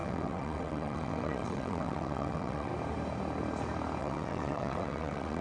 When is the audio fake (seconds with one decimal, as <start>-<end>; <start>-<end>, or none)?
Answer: 0.0-2.7; 4.0-5.4